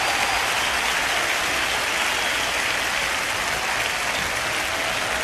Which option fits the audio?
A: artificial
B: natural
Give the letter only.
B